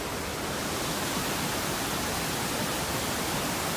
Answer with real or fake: real